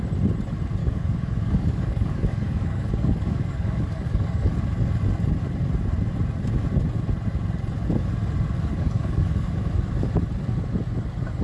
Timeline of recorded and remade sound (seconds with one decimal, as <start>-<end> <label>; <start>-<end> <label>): 0.0-0.8 recorded; 0.8-4.5 remade; 4.5-8.7 recorded; 8.7-9.5 remade; 9.5-11.4 recorded